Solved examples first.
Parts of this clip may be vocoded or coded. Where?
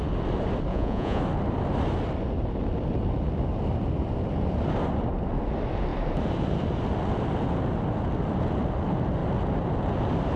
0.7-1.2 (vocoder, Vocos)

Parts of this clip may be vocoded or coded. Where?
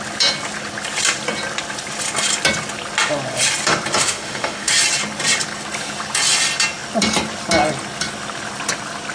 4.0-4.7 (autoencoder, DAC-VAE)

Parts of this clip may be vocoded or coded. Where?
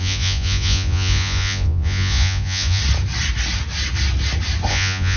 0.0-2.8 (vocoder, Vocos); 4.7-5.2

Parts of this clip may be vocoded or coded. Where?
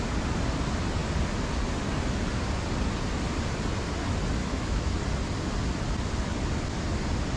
4.4-4.9 (autoencoder, DAC-VAE)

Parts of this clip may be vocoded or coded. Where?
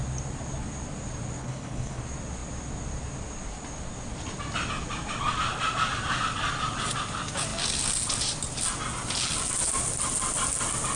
1.4-2.0 (codec, HILCodec)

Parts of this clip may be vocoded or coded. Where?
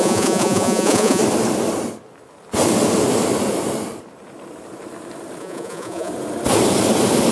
0.0-1.2 (vocoder, Vocos); 5.4-6.1